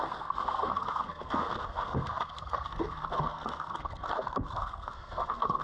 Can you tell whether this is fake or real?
fake